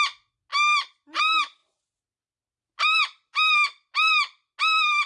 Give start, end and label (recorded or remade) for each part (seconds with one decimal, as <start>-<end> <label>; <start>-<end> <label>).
0.0-5.1 recorded